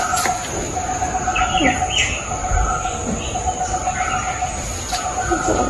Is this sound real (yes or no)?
yes